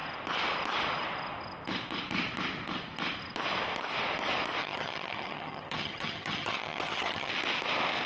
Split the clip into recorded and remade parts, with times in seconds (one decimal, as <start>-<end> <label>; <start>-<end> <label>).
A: 0.0-4.6 recorded; 4.6-7.3 remade; 7.3-8.1 recorded